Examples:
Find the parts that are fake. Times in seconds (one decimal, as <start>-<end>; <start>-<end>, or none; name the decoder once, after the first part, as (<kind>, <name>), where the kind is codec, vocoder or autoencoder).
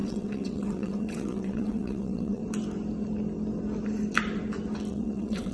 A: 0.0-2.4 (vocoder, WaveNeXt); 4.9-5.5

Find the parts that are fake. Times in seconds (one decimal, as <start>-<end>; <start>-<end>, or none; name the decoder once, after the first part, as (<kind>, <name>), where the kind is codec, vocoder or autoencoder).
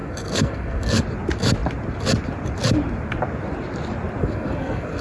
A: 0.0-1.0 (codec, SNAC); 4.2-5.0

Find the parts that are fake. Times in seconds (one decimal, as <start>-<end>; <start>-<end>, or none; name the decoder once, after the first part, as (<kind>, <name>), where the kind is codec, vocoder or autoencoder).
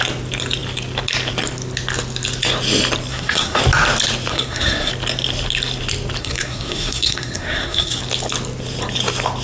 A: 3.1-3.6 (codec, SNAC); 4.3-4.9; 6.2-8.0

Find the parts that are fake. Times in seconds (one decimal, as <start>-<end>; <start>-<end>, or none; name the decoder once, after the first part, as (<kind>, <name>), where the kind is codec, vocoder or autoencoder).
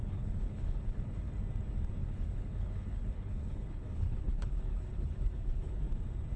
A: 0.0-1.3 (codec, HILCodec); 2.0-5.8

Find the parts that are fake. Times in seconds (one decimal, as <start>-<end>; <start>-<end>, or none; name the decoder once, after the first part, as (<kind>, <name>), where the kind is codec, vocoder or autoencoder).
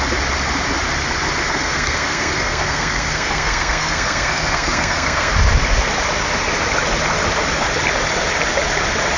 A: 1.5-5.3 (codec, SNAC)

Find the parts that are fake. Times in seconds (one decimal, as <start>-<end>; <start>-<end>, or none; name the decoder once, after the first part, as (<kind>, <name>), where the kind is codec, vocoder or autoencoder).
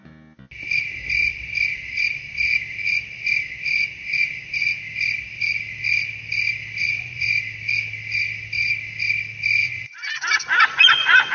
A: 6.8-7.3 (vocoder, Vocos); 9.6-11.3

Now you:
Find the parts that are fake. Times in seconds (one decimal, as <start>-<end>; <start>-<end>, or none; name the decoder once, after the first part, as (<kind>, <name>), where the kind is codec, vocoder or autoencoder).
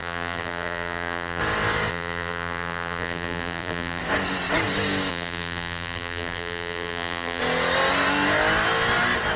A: 0.0-1.4 (vocoder, BigVGAN v2); 1.9-4.0; 5.1-7.4